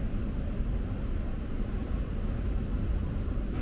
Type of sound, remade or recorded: recorded